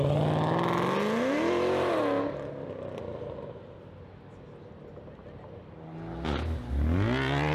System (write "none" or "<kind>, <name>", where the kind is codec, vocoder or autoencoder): none